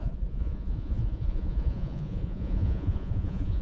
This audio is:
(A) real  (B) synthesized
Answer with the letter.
B